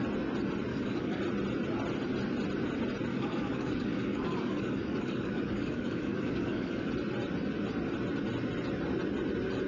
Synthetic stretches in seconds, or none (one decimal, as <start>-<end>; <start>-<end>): 0.7-1.2; 3.1-6.9

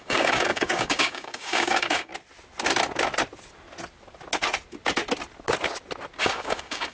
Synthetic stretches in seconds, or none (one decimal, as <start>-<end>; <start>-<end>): 0.0-2.1; 6.2-6.9

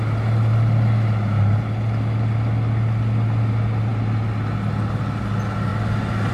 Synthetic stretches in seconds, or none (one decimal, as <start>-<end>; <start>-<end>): none

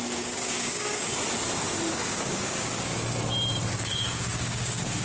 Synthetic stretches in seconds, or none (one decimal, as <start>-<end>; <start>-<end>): 0.0-1.1; 1.9-2.9; 3.7-5.0

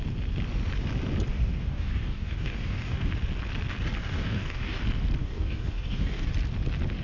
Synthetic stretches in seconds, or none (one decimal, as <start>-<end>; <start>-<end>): 1.3-3.1; 4.0-4.8; 5.2-6.3